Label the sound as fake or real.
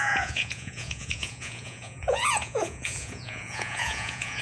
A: fake